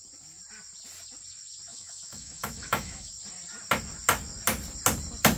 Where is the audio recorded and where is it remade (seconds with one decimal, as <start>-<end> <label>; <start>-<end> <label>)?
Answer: 0.0-1.7 recorded; 1.7-3.1 remade; 3.1-5.4 recorded